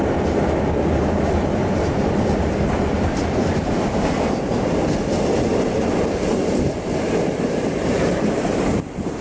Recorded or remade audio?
remade